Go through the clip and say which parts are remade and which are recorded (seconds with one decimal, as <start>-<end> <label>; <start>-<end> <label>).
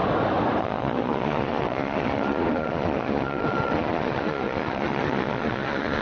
0.0-0.6 recorded; 0.6-6.0 remade